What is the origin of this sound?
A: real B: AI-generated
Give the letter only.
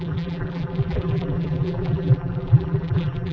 B